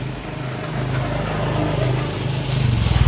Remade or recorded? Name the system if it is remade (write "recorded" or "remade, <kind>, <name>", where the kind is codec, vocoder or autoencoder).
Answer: recorded